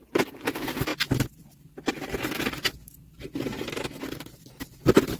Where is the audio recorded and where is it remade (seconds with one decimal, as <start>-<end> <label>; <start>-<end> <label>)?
0.0-5.2 recorded